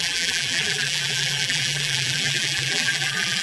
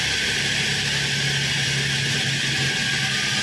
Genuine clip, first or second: second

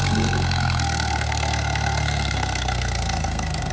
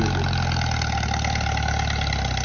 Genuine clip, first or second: second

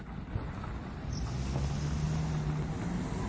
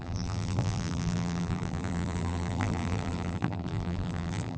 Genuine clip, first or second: first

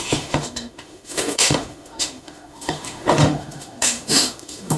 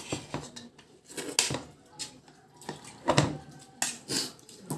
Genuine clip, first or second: second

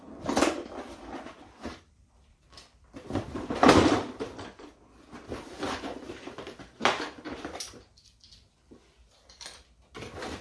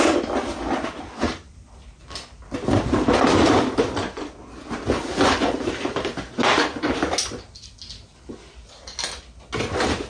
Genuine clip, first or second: second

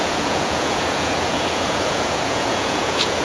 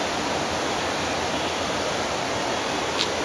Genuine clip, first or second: second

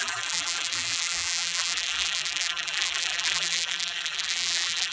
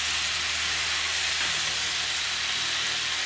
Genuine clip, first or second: second